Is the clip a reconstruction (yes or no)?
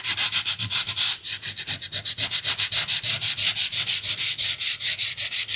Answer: no